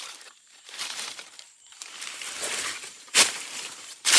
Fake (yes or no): yes